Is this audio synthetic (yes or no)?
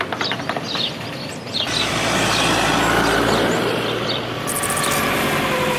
no